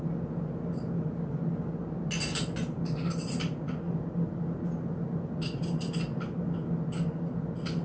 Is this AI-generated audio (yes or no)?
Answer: no